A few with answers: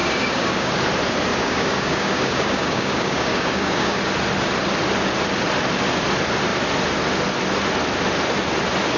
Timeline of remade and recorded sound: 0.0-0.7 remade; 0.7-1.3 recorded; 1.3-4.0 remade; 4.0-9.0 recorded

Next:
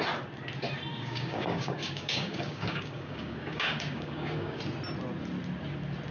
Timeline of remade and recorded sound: 0.0-0.9 recorded; 0.9-4.6 remade; 4.6-6.1 recorded

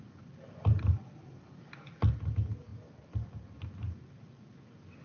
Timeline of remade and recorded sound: 0.0-5.0 recorded

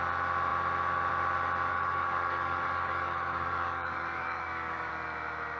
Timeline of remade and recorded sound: 0.0-1.7 recorded; 1.7-4.9 remade; 4.9-5.6 recorded

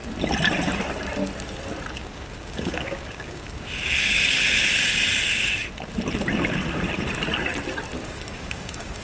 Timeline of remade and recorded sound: 0.0-1.9 recorded; 1.9-4.4 remade; 4.4-8.0 recorded; 8.0-9.0 remade

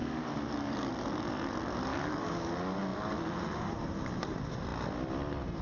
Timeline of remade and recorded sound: 0.0-0.9 remade; 0.9-1.9 recorded; 1.9-2.5 remade; 2.5-5.6 recorded

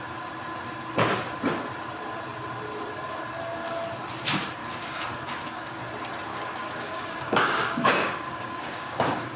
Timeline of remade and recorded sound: 0.0-4.6 recorded; 4.6-5.8 remade; 5.8-6.3 recorded; 6.3-9.4 remade